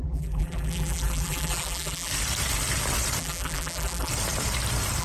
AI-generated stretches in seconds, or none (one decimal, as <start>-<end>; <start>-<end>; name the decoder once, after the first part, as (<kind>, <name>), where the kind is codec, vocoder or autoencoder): 0.0-2.1 (vocoder, BigVGAN v2); 3.2-4.1